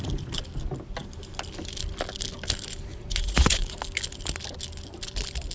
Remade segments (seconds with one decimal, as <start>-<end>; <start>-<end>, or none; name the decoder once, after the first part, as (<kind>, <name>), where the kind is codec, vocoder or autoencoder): 2.9-3.8 (vocoder, Vocos)